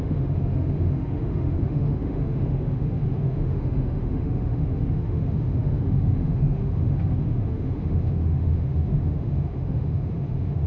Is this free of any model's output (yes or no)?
no